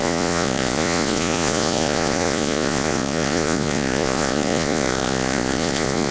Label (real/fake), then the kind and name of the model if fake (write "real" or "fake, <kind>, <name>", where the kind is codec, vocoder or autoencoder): fake, vocoder, Vocos